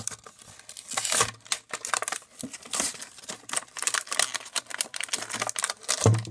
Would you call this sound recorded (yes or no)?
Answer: yes